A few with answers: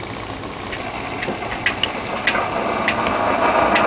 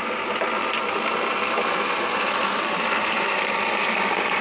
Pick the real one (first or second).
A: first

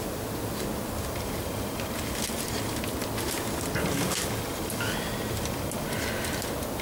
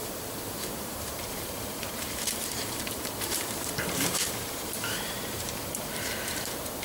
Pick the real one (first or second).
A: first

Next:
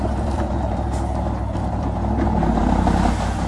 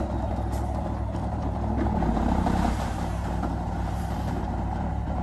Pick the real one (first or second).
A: first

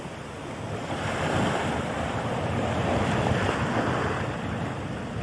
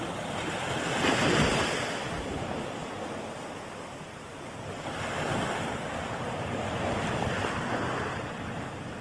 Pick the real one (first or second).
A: second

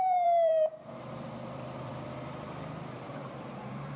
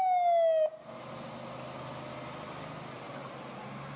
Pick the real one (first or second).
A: second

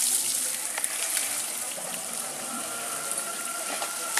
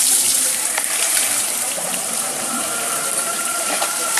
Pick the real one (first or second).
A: first